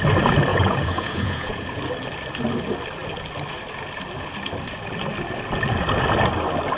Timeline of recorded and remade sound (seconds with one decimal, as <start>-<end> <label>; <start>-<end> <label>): 0.0-0.5 recorded; 0.5-1.8 remade; 1.8-6.8 recorded